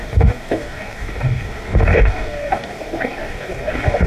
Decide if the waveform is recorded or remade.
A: remade